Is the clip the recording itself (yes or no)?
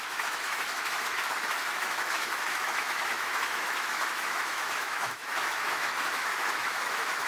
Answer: no